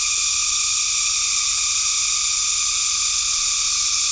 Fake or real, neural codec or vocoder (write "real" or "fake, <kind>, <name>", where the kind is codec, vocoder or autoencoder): real